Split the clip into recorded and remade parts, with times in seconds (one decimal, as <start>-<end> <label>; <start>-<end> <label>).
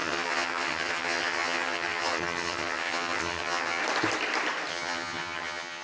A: 0.0-3.8 remade; 3.8-4.7 recorded; 4.7-5.8 remade